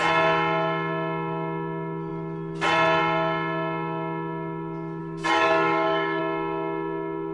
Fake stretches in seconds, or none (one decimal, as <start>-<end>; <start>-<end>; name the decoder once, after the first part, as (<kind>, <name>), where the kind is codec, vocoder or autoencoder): 5.0-6.2 (codec, DAC)